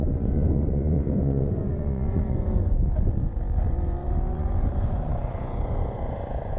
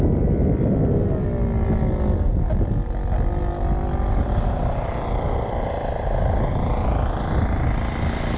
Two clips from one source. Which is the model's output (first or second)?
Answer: first